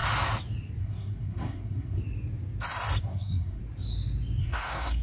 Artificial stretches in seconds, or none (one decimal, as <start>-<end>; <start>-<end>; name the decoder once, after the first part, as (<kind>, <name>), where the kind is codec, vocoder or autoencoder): 0.8-2.0 (codec, SNAC); 3.0-3.6; 4.4-5.0